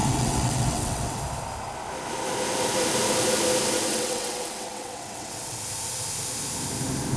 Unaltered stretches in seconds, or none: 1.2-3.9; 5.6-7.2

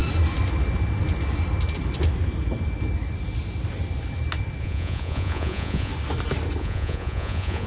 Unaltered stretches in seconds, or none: 0.0-4.6; 5.9-6.6